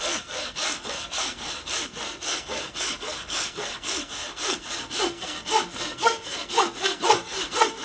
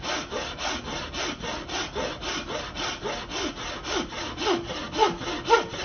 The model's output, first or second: first